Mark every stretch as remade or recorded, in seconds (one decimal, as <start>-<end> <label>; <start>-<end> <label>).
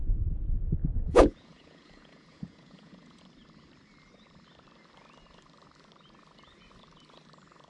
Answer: 0.0-3.2 remade; 3.2-7.7 recorded